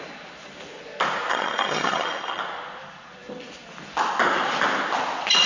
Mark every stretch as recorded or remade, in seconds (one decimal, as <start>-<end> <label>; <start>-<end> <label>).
0.0-1.3 recorded; 1.3-2.4 remade; 2.4-5.5 recorded